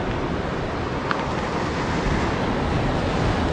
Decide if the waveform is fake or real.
real